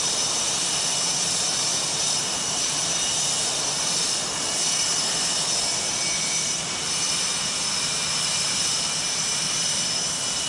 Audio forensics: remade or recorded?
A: recorded